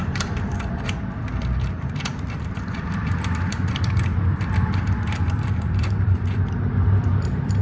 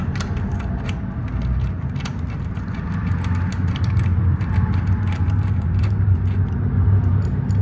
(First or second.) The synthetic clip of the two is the first